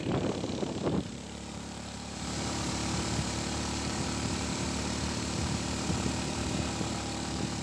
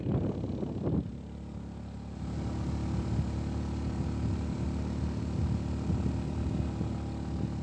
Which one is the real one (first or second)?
second